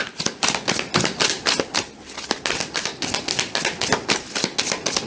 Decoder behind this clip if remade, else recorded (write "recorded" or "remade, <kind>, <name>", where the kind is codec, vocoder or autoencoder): recorded